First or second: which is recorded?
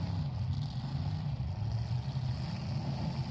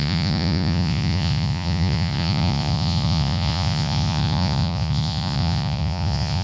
first